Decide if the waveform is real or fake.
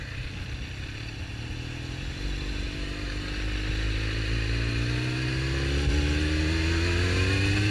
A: real